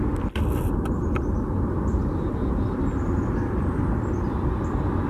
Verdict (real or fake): real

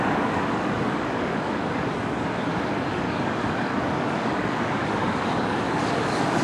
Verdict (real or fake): fake